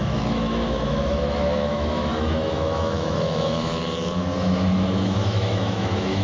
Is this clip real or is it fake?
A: fake